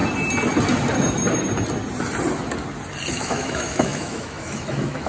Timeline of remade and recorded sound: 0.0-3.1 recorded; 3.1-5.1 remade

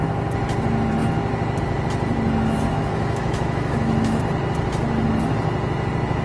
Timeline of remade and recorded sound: 0.0-2.7 recorded; 2.7-4.2 remade; 4.2-6.2 recorded

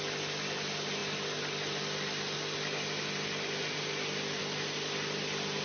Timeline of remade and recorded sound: 0.0-5.6 recorded

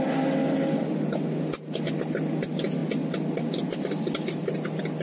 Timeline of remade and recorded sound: 0.0-5.0 recorded

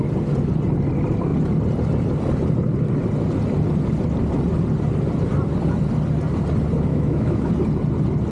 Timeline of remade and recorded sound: 0.0-6.9 recorded; 6.9-7.5 remade; 7.5-8.3 recorded

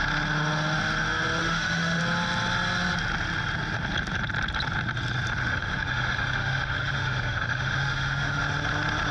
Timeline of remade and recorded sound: 0.0-1.4 recorded; 1.4-2.0 remade; 2.0-5.4 recorded; 5.4-8.4 remade; 8.4-9.1 recorded

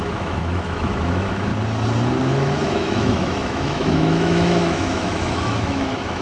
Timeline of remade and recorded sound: 0.0-1.5 remade; 1.5-2.2 recorded; 2.2-6.2 remade